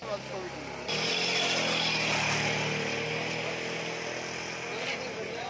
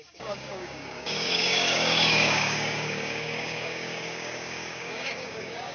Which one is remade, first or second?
second